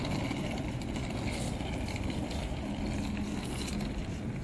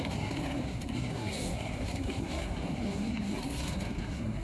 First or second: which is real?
first